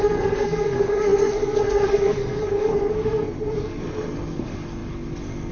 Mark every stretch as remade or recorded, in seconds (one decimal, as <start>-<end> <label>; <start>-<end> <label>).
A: 0.0-5.5 remade